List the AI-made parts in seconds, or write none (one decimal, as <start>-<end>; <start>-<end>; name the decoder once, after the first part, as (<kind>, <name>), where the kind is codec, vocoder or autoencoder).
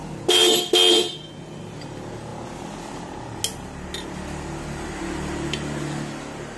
none